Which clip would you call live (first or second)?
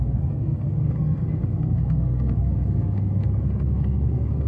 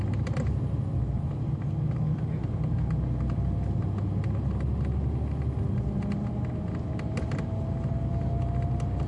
second